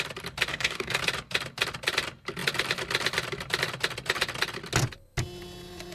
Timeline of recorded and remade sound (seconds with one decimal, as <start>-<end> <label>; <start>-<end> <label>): 0.0-0.5 recorded; 0.5-1.0 remade; 1.0-5.9 recorded